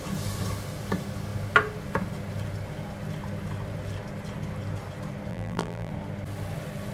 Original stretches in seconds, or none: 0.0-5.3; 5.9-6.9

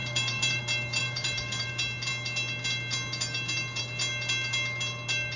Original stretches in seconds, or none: 0.6-1.0; 1.7-5.4

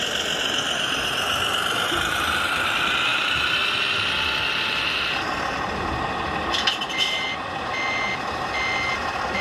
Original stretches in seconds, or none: 0.0-3.1; 3.8-9.4

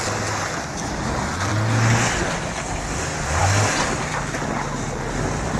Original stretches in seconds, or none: 0.0-5.6

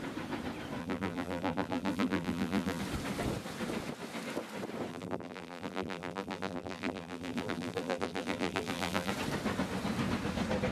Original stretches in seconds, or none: 0.0-0.8; 2.8-4.9; 9.1-10.7